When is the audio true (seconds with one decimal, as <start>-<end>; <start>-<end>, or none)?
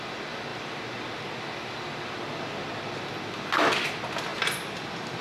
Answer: 0.0-0.5; 2.4-5.2